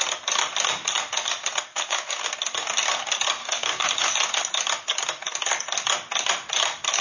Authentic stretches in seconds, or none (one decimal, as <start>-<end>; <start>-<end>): 0.0-1.7; 2.2-3.4; 4.1-7.0